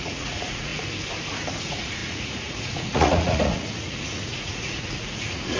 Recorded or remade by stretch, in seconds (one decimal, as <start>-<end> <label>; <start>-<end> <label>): 0.0-0.7 remade; 0.7-1.6 recorded; 1.6-5.6 remade